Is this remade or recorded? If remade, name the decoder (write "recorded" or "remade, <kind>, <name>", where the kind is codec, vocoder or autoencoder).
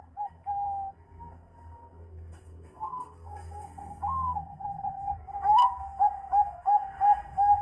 remade, codec, SNAC